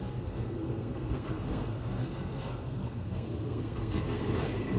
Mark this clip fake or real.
fake